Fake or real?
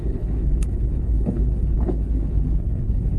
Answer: fake